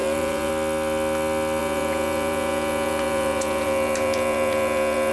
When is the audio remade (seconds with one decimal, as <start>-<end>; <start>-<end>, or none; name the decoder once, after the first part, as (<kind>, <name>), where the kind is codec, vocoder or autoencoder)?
0.0-0.5 (vocoder, Vocos); 1.6-5.1